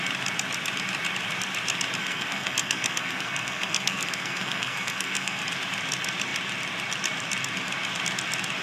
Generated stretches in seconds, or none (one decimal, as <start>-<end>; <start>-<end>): 2.0-5.4